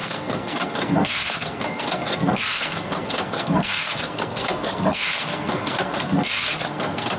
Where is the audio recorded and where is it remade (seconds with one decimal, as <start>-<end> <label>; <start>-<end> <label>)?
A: 0.0-7.2 remade